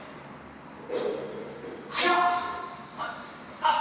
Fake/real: real